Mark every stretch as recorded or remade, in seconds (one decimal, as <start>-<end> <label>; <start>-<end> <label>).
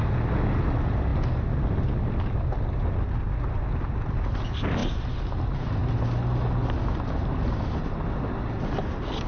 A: 0.0-9.3 recorded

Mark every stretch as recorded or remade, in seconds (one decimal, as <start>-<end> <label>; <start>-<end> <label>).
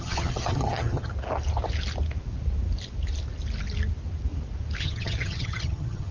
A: 0.0-1.1 remade; 1.1-4.8 recorded; 4.8-6.1 remade